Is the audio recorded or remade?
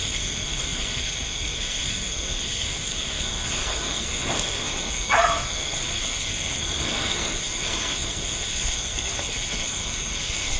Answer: remade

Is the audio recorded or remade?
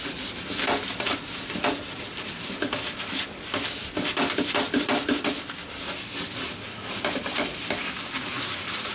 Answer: recorded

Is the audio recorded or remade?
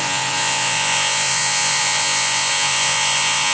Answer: remade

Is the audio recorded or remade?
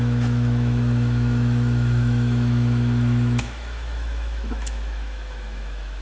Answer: remade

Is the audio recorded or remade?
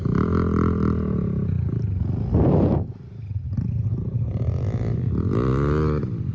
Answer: recorded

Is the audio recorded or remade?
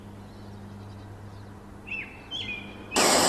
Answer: recorded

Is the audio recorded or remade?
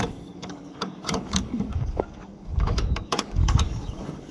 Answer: remade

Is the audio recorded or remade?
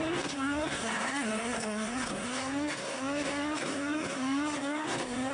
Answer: remade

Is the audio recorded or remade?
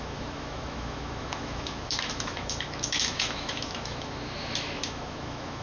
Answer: remade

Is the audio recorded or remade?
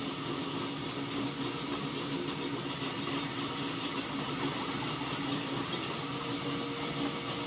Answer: recorded